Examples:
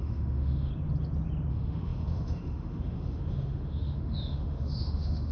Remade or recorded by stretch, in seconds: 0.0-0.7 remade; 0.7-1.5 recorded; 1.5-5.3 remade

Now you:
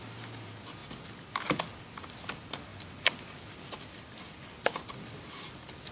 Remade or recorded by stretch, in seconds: 0.0-5.9 recorded

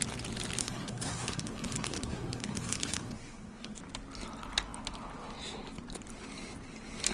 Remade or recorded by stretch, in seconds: 0.0-0.6 recorded; 0.6-3.8 remade; 3.8-7.1 recorded

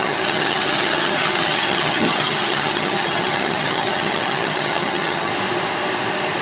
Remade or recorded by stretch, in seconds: 0.0-5.3 remade; 5.3-6.4 recorded

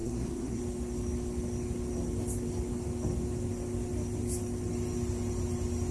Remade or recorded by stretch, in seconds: 0.0-0.6 remade; 0.6-5.9 recorded

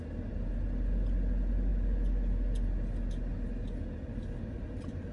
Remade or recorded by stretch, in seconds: 0.0-5.1 recorded

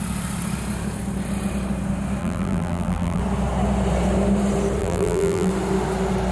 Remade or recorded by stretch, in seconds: 0.0-2.2 recorded; 2.2-3.2 remade; 3.2-4.8 recorded; 4.8-5.5 remade; 5.5-6.3 recorded